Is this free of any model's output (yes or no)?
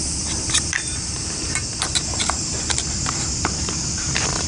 no